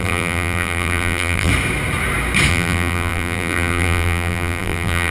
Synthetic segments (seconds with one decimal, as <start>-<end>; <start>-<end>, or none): 0.0-1.5; 2.5-5.1